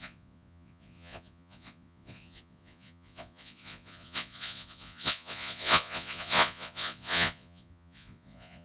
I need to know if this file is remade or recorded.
remade